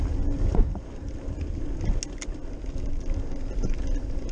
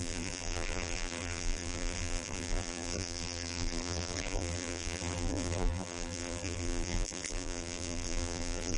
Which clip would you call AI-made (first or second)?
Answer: second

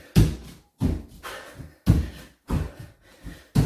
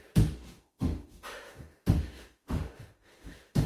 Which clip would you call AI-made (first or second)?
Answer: second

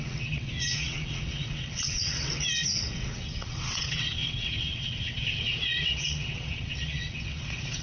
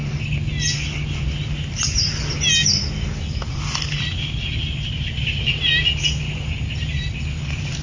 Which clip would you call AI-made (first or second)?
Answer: first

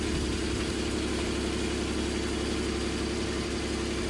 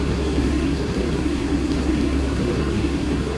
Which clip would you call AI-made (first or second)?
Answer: second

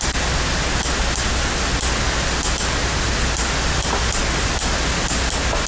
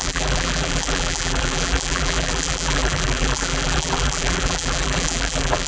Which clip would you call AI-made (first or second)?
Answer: second